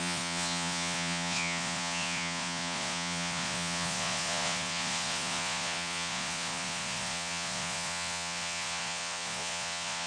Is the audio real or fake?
fake